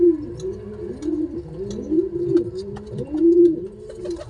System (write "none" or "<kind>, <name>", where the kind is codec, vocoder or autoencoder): none